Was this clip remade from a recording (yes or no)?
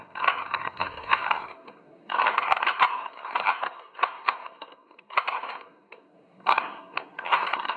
yes